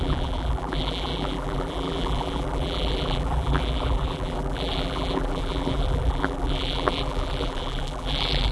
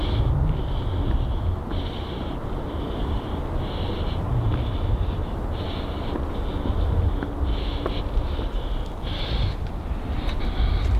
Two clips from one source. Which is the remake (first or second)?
first